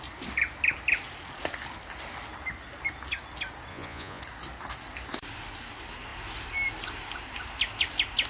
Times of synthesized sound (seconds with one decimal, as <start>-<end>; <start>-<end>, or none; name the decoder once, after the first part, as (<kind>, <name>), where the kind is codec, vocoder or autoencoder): 3.7-4.2 (vocoder, Vocos)